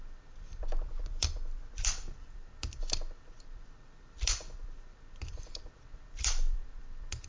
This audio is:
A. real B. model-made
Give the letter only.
B